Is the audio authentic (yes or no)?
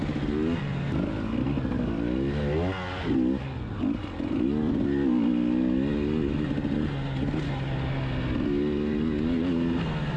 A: yes